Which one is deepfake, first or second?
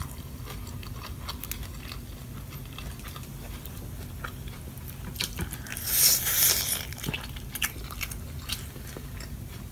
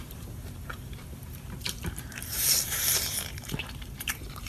second